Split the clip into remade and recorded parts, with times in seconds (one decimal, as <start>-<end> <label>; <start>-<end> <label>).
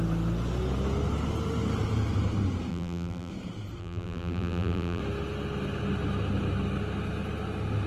0.0-2.7 recorded; 2.7-3.3 remade; 3.3-3.8 recorded; 3.8-5.0 remade; 5.0-7.9 recorded